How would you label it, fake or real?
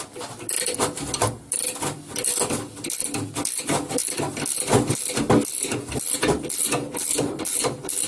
real